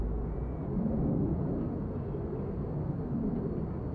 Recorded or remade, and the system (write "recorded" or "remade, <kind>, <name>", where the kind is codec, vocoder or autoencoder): recorded